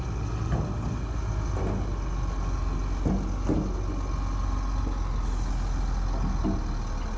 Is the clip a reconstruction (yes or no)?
no